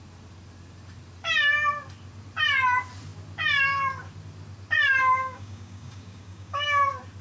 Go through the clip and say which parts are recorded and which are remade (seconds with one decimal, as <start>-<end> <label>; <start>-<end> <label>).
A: 0.0-5.0 recorded; 5.0-6.8 remade; 6.8-7.2 recorded